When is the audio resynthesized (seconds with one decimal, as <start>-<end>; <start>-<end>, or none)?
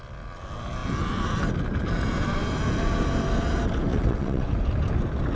3.9-4.5